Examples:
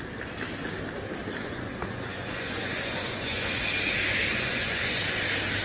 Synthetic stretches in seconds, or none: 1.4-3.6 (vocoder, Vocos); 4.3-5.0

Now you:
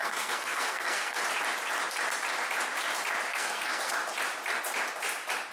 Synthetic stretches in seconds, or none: 0.0-1.2 (codec, SNAC); 3.3-3.9

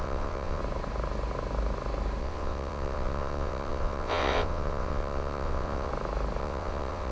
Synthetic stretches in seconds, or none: 0.0-0.6 (vocoder, WaveNeXt); 2.2-5.9; 6.4-7.1

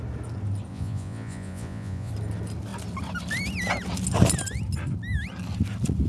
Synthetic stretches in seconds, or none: 0.7-2.1 (vocoder, Vocos)

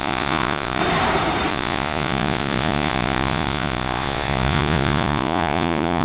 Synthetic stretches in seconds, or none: 0.0-0.8 (vocoder, Vocos); 1.5-6.0

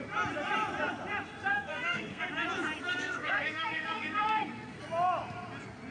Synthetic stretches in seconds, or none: 1.5-2.2 (codec, SNAC); 2.8-4.8